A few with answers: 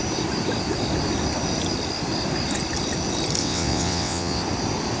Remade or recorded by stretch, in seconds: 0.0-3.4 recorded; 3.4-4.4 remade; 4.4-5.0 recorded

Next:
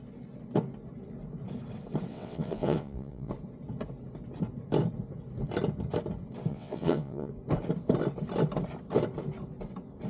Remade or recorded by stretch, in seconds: 0.0-2.1 recorded; 2.1-3.3 remade; 3.3-6.5 recorded; 6.5-7.3 remade; 7.3-10.1 recorded